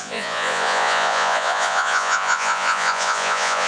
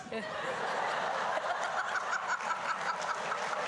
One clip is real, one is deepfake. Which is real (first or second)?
second